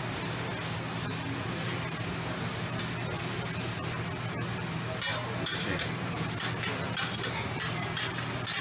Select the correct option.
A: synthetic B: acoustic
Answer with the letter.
B